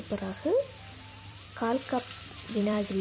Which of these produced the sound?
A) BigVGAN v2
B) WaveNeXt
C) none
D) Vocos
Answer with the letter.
A